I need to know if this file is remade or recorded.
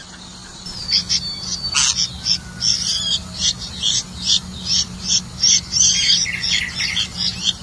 recorded